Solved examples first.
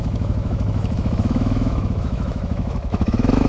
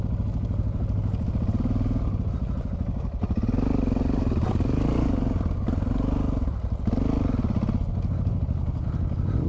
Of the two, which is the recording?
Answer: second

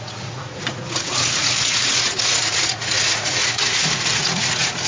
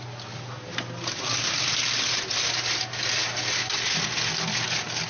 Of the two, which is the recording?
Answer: second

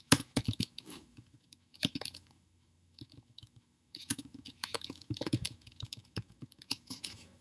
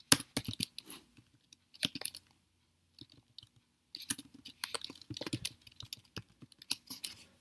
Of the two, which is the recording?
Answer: second